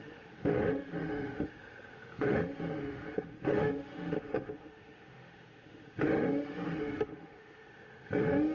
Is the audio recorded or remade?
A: remade